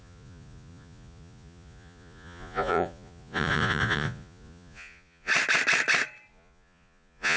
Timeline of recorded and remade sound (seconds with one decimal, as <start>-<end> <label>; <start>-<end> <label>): 0.0-5.3 remade; 5.3-6.3 recorded; 6.3-7.4 remade